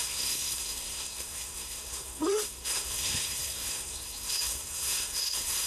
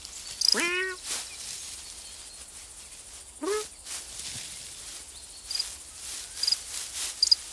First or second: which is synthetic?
first